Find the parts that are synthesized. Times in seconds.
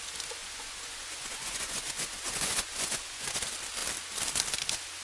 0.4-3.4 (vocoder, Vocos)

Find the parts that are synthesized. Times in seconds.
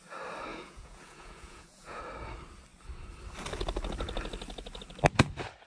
0.5-2.0 (vocoder, Vocos)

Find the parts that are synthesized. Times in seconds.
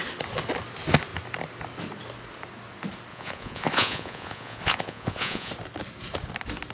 3.1-5.5 (vocoder, Vocos)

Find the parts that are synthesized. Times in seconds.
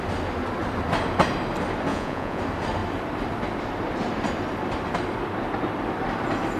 1.9-2.4 (vocoder, Vocos)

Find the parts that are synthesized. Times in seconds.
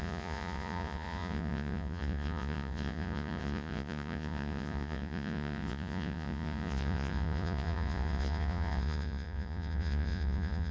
0.0-10.7 (vocoder, Vocos)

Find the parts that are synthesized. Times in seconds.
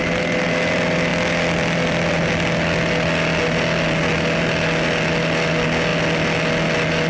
none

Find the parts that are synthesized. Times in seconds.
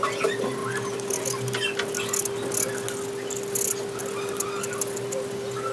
none